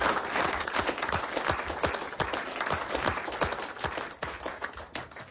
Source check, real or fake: real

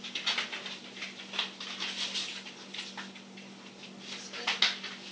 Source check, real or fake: real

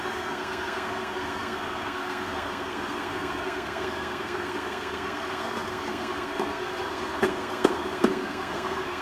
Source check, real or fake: fake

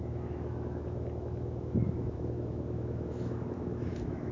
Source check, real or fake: fake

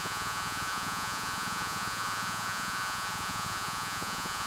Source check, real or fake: fake